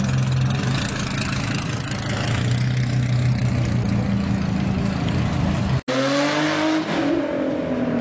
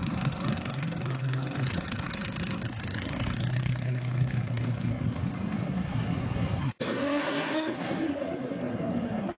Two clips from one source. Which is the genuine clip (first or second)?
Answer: first